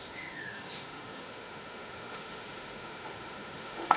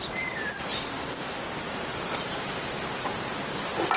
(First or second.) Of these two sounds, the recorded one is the second